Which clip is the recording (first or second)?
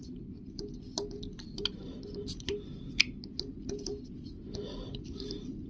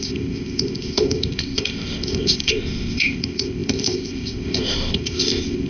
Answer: first